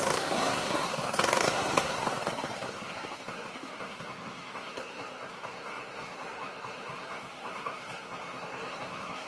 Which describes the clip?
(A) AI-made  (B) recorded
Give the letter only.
A